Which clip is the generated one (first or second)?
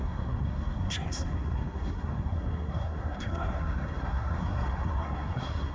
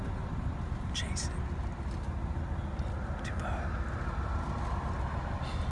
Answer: first